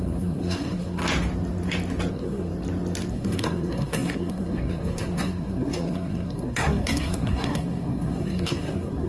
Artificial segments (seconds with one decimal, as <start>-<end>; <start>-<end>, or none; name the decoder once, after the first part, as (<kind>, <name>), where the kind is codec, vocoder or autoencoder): 0.0-1.0 (codec, SNAC); 2.1-2.5; 3.1-9.1